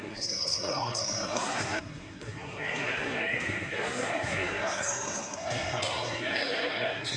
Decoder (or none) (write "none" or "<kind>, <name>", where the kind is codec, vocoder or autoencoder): codec, SNAC